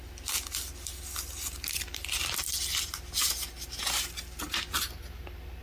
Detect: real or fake real